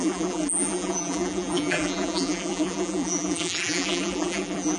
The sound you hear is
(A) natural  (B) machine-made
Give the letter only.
B